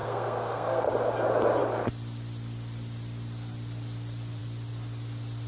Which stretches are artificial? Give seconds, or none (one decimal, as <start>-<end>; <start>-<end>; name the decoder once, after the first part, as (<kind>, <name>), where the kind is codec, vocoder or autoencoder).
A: 0.0-0.9 (codec, SNAC)